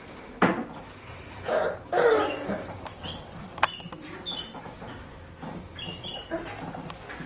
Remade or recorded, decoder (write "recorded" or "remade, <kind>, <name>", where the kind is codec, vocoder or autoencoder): recorded